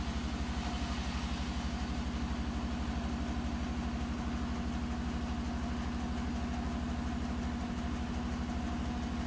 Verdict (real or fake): real